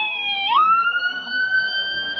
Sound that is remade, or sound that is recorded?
remade